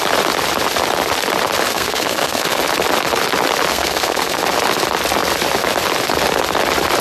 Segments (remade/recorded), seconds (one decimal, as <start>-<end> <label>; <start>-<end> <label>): 0.0-1.7 recorded; 1.7-2.6 remade; 2.6-3.7 recorded; 3.7-4.4 remade; 4.4-7.0 recorded